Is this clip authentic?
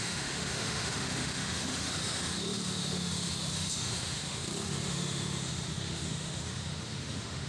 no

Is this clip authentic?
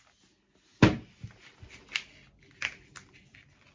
yes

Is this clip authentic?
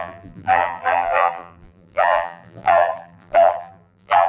no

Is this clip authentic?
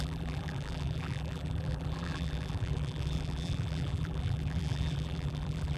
no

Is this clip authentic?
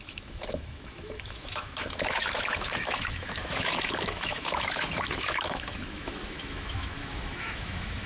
no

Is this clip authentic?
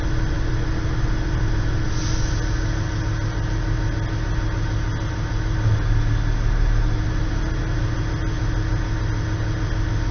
yes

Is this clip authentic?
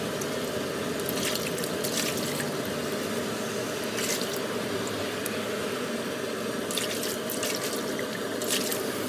yes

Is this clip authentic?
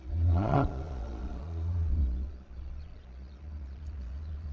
no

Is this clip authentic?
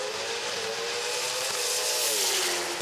yes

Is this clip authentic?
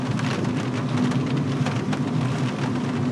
yes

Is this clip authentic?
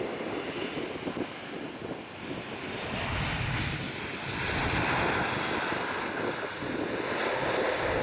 yes